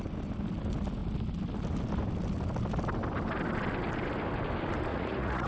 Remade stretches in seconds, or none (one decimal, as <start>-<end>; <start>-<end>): 4.9-5.5